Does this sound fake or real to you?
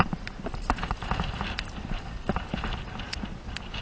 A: real